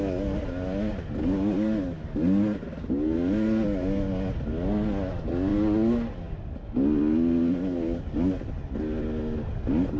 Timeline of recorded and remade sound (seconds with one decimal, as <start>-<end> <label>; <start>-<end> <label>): 0.0-10.0 recorded